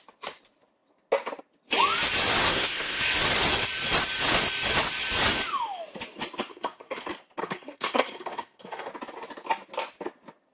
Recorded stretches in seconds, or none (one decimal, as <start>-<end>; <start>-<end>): 0.0-2.4; 3.0-6.5; 7.0-7.4; 8.9-10.5